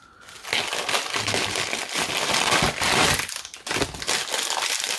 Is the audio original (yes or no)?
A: yes